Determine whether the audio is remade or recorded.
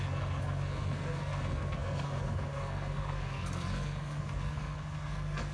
remade